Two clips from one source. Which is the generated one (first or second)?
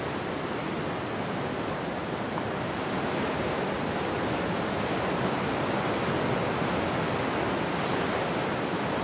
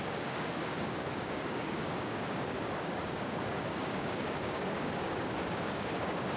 second